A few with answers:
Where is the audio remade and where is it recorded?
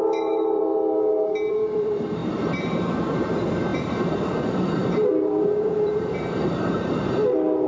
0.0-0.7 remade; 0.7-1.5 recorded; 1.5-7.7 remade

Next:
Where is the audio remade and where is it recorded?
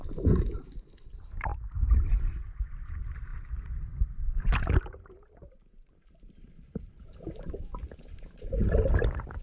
0.0-8.6 remade; 8.6-9.4 recorded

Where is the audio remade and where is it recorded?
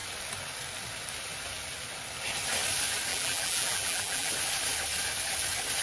0.0-3.1 recorded; 3.1-4.3 remade; 4.3-5.8 recorded